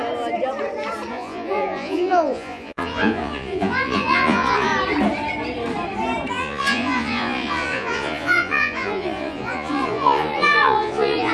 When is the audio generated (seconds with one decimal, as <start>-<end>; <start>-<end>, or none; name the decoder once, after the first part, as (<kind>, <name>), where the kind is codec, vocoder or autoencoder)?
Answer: 1.1-4.7 (vocoder, Vocos); 6.3-11.3